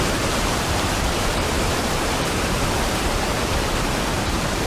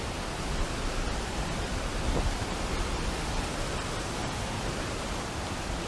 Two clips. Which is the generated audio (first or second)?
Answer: first